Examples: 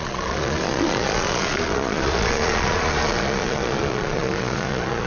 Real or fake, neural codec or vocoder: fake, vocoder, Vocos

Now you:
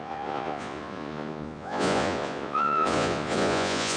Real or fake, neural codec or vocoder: fake, vocoder, Vocos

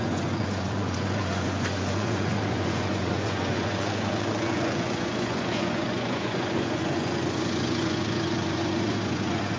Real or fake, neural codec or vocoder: fake, vocoder, Vocos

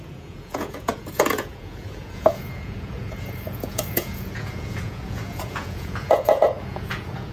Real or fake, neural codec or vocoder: fake, vocoder, Vocos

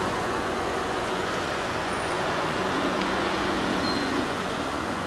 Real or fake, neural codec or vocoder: fake, vocoder, Vocos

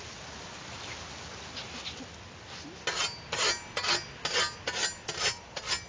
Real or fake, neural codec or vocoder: real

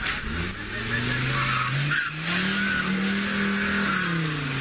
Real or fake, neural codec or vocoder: real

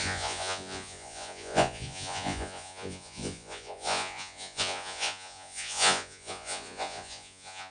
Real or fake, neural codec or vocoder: fake, vocoder, Vocos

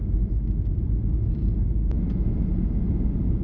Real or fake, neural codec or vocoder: real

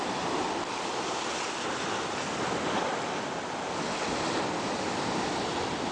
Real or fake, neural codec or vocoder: real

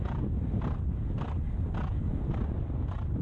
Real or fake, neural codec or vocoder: real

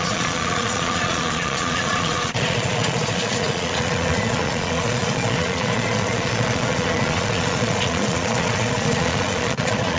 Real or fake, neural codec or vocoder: fake, vocoder, Vocos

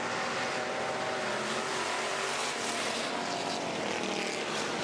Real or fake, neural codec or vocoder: real